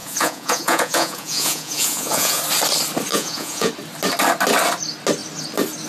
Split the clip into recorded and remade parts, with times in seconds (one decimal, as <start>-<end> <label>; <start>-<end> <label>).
0.0-2.4 remade; 2.4-3.1 recorded; 3.1-3.7 remade; 3.7-5.9 recorded

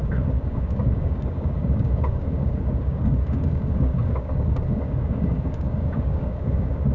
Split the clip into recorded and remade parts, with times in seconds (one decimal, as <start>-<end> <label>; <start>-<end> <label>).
0.0-6.9 remade